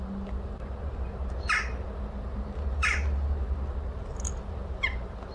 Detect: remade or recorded recorded